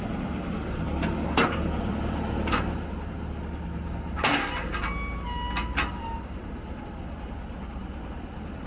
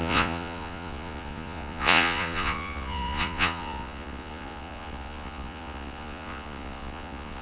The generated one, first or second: second